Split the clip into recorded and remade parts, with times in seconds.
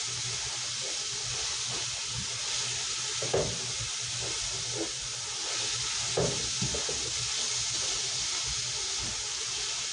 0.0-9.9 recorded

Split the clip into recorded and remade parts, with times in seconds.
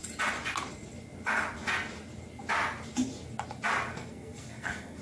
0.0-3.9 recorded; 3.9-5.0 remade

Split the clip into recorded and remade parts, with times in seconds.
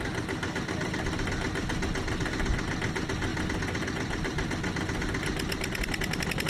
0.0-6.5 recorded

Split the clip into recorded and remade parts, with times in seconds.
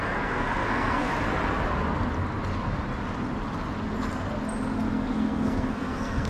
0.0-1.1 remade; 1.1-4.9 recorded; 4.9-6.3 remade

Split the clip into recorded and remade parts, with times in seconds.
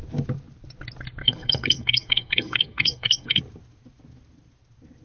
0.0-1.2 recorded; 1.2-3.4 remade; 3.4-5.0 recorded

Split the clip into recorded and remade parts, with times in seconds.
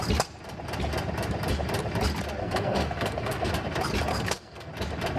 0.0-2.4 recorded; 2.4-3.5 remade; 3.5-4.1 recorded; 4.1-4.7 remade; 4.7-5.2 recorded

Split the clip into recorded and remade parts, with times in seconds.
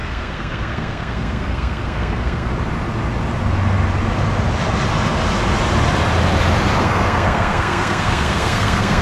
0.0-2.5 remade; 2.5-6.8 recorded; 6.8-9.0 remade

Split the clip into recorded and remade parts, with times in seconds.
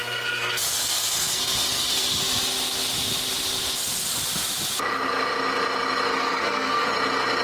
0.0-2.2 remade; 2.2-6.1 recorded; 6.1-6.9 remade; 6.9-7.4 recorded